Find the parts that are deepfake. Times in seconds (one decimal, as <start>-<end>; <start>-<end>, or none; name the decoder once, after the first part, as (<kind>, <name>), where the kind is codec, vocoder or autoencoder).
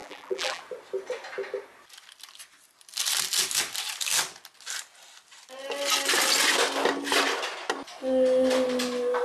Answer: 0.0-0.6 (vocoder, BigVGAN v2)